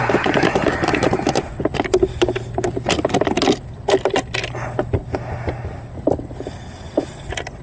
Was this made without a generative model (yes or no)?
yes